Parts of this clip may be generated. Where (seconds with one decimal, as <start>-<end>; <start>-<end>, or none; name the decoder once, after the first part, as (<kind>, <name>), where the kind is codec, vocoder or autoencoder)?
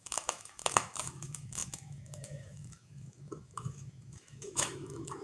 0.0-5.2 (autoencoder, DAC-VAE)